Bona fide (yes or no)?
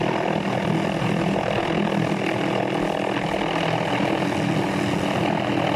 yes